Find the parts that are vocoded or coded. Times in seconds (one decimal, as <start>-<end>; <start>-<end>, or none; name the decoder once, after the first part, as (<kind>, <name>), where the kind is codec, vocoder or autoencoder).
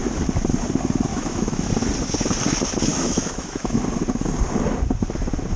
1.1-1.7 (autoencoder, DAC-VAE); 2.9-3.8